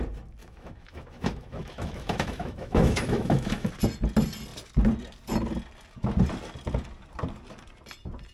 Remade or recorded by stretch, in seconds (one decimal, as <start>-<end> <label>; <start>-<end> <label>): 0.0-0.4 recorded; 0.4-3.7 remade; 3.7-8.3 recorded